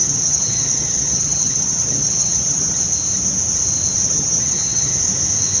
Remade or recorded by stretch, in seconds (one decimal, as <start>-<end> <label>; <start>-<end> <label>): 0.0-2.8 remade; 2.8-4.0 recorded; 4.0-5.0 remade; 5.0-5.6 recorded